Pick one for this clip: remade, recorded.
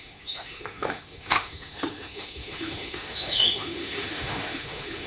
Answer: remade